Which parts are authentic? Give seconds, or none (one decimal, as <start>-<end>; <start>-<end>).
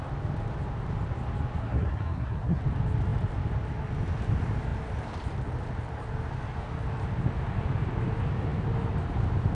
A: 0.0-1.6; 2.6-9.5